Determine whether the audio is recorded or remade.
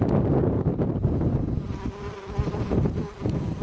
recorded